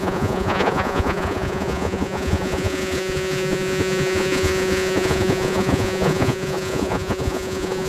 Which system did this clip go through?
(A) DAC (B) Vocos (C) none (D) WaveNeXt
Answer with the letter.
B